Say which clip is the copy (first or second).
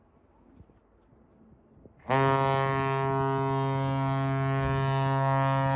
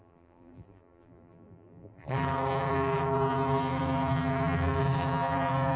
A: second